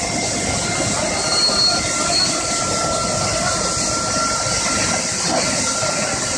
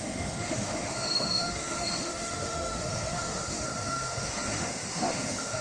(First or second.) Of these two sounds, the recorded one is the first